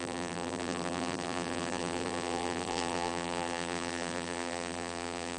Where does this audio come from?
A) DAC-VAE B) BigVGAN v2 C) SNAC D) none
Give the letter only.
B